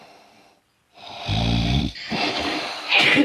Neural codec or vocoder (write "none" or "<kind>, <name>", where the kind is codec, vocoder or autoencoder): vocoder, BigVGAN v2